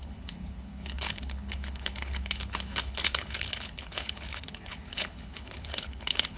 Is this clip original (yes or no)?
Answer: no